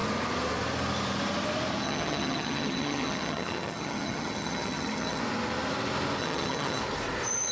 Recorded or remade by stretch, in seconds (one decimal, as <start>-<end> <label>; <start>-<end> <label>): 0.0-1.8 recorded; 1.8-5.2 remade; 5.2-6.2 recorded; 6.2-6.8 remade; 6.8-7.5 recorded